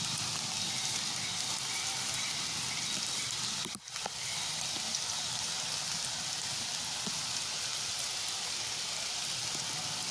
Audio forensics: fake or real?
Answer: real